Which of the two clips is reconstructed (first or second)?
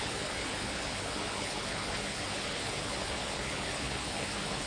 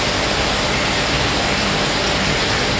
first